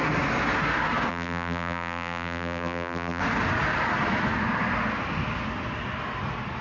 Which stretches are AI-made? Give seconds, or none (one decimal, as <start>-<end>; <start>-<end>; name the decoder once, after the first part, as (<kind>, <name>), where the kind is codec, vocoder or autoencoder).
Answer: 1.1-3.2 (vocoder, BigVGAN v2)